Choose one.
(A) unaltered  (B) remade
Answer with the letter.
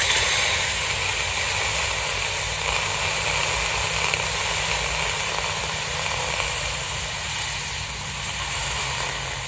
A